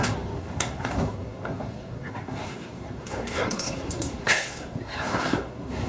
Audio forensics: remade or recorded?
remade